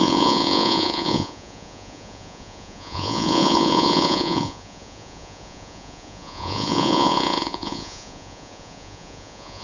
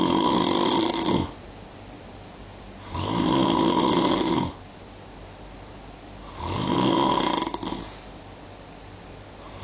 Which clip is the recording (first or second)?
second